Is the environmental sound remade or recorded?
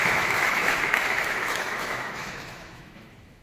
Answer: remade